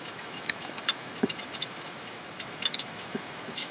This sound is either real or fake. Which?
fake